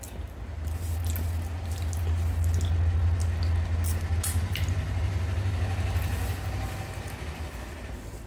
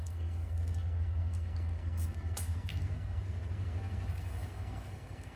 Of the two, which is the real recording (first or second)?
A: first